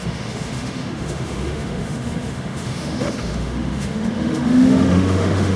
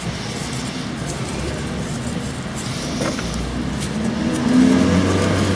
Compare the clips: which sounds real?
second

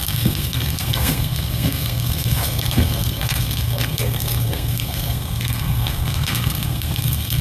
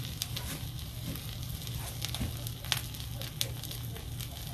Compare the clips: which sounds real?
second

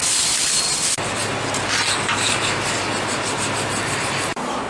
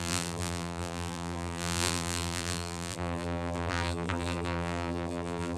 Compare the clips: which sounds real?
first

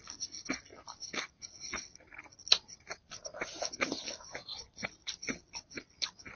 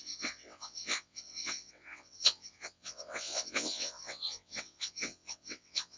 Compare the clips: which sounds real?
first